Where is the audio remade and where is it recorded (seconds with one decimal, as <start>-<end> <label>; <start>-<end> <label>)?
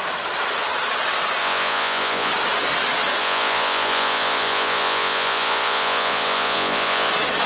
0.0-1.4 recorded; 1.4-2.3 remade; 2.3-3.2 recorded; 3.2-7.1 remade; 7.1-7.5 recorded